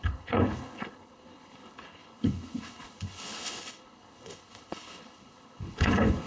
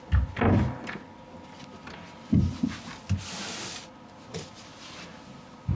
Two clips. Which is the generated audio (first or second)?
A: first